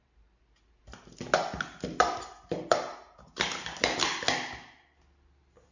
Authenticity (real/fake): real